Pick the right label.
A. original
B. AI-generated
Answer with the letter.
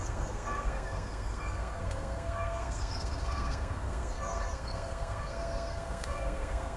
B